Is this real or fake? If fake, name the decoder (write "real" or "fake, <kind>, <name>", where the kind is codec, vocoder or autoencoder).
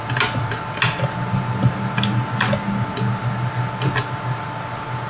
real